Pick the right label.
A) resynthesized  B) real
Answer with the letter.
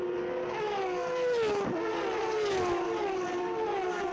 B